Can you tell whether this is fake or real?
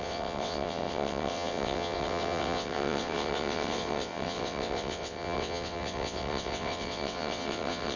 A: fake